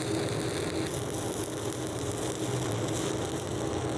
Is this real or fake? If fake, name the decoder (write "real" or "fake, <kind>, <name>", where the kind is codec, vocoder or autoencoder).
real